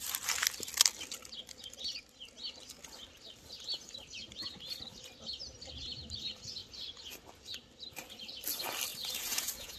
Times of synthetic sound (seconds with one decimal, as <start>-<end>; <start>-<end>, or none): 8.9-9.8